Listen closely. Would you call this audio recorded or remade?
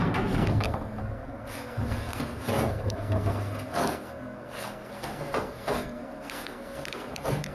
remade